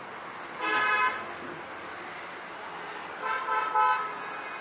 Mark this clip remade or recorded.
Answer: recorded